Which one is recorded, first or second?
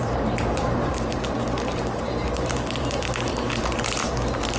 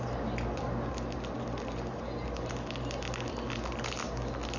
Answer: second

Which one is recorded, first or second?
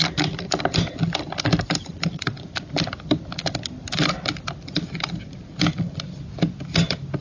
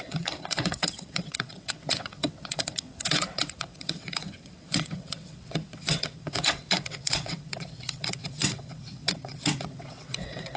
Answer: first